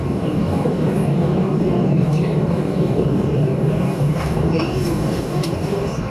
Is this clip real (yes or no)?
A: no